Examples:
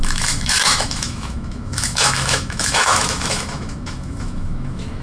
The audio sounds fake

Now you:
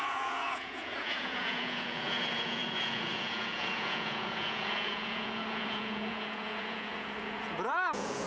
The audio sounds fake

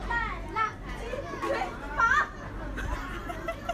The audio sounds real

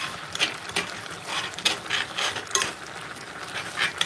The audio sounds real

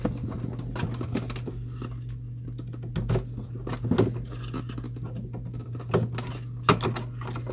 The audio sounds real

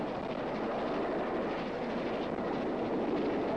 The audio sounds real